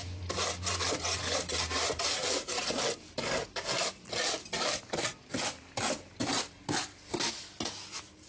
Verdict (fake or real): real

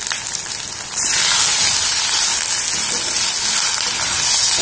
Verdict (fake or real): real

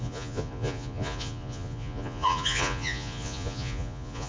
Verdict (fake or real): fake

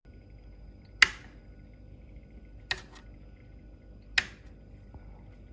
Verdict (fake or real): real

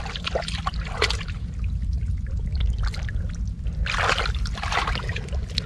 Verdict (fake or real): real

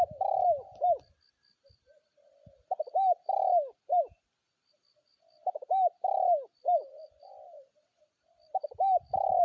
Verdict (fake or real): real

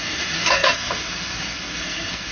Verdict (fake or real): fake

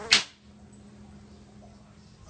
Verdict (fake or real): real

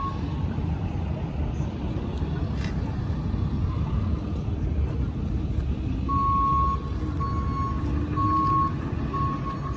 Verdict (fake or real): real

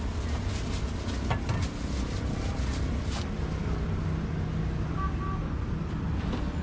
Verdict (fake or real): real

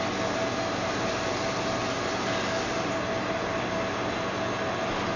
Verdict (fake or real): real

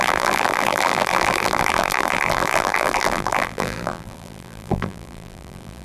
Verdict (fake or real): fake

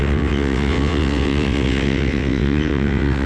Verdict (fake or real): fake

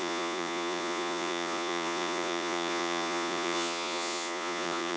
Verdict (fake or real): fake